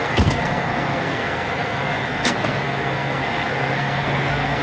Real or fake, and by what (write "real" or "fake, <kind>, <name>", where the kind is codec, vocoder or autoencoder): fake, codec, SNAC